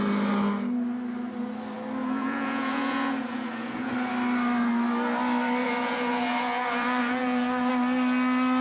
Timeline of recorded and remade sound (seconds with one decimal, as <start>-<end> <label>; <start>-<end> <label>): 0.0-2.0 recorded; 2.0-3.9 remade; 3.9-5.6 recorded; 5.6-7.7 remade; 7.7-8.6 recorded